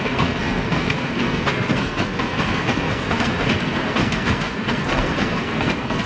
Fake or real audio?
fake